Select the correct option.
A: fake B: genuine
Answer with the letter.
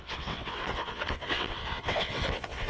A